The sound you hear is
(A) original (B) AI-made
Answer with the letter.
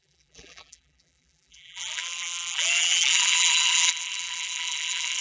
B